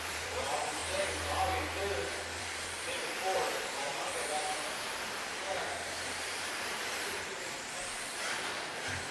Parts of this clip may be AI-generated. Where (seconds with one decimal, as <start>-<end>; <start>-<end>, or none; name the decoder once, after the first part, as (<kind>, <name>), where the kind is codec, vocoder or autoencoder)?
0.0-0.8 (vocoder, BigVGAN v2); 2.4-9.1